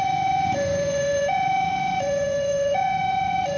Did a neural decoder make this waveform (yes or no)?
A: yes